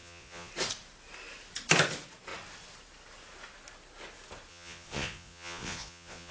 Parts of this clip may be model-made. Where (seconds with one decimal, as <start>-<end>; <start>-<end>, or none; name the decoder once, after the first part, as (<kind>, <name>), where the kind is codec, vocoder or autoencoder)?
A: 0.0-0.5 (vocoder, Vocos); 4.5-6.3